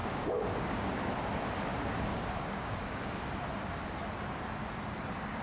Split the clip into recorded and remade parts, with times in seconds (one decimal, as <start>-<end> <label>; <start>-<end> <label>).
0.0-1.1 remade; 1.1-1.7 recorded; 1.7-3.2 remade; 3.2-5.4 recorded